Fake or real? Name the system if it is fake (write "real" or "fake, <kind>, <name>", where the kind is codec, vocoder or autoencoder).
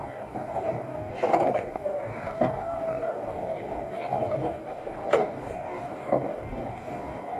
fake, codec, DAC